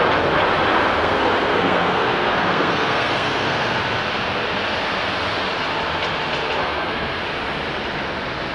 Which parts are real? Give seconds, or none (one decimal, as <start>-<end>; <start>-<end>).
0.0-1.0; 3.8-6.6; 7.2-8.5